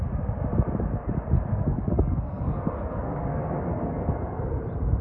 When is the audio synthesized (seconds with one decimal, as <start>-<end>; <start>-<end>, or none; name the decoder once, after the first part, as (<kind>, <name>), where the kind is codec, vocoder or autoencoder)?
1.5-4.5 (codec, SNAC)